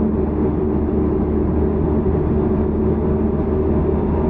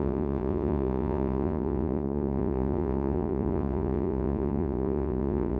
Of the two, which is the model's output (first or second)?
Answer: second